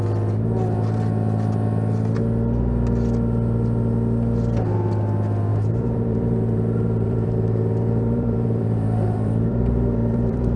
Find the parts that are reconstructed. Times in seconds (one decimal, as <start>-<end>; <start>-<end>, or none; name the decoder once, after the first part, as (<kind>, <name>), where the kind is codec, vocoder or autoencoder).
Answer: 5.5-10.6 (vocoder, BigVGAN v2)